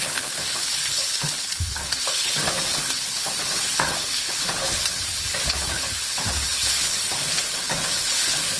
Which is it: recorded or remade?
remade